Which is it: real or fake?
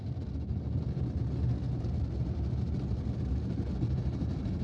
real